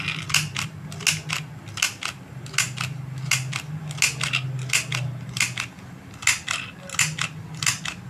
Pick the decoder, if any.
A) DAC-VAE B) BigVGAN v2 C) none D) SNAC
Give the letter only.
C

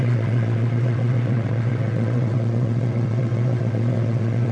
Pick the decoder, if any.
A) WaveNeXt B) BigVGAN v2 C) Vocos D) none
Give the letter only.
A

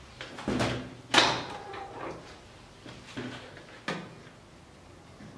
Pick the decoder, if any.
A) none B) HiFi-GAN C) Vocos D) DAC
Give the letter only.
A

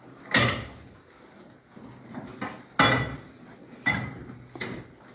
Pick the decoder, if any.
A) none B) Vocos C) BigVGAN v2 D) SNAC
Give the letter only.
A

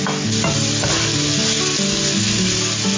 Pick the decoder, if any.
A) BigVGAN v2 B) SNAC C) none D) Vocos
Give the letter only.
C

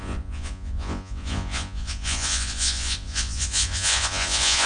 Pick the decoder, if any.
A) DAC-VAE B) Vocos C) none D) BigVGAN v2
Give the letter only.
B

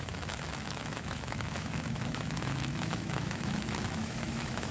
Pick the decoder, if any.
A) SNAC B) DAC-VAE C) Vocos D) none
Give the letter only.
B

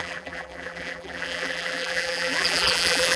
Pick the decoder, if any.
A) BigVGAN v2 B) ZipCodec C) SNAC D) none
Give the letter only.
A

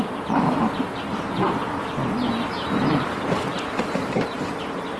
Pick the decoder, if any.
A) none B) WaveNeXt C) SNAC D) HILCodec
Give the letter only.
A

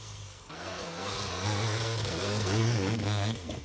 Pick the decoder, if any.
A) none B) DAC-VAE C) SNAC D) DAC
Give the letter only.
C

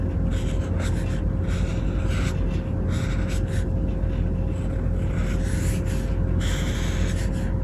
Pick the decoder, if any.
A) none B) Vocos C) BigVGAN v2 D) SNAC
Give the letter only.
A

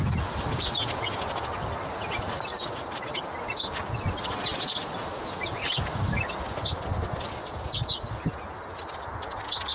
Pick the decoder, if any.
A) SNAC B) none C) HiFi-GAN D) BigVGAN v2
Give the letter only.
B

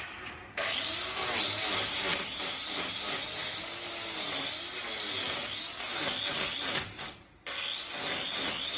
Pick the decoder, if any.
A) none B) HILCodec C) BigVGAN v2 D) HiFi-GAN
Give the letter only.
A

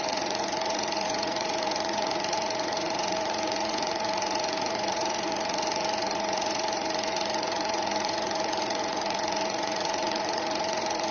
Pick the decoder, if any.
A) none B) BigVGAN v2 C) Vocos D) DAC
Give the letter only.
C